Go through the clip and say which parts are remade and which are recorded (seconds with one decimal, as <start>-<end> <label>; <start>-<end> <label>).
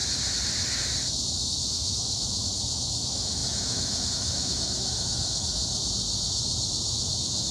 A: 0.0-1.3 recorded; 1.3-5.6 remade; 5.6-6.9 recorded; 6.9-7.5 remade